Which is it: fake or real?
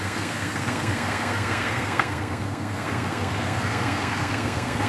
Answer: fake